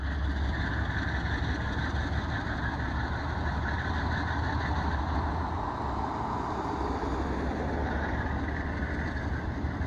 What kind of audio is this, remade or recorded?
recorded